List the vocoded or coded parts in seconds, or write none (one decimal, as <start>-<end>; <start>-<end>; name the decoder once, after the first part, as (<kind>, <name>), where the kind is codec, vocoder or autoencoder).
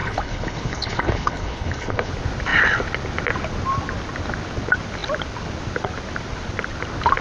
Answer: 0.0-2.1 (codec, HILCodec)